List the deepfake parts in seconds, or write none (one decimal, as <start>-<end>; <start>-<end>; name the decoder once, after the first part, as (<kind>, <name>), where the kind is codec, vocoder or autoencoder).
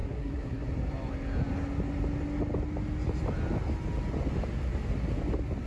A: 0.0-0.7 (codec, SNAC)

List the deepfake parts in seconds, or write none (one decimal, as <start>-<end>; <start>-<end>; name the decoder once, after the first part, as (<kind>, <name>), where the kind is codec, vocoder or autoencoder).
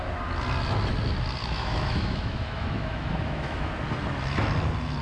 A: 1.4-3.7 (autoencoder, DAC-VAE)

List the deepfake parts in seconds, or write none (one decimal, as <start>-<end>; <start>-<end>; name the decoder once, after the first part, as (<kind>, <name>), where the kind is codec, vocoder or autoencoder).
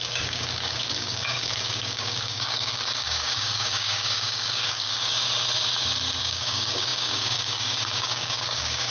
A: 0.0-5.2 (codec, DAC); 6.2-8.9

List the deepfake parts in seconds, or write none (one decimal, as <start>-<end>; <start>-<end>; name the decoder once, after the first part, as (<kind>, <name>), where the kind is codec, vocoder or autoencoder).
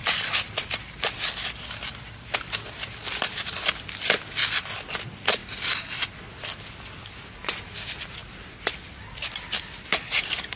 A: 0.0-1.9 (vocoder, BigVGAN v2)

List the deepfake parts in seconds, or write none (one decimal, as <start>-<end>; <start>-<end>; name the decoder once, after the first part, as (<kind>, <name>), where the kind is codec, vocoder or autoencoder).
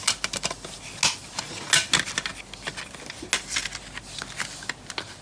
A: none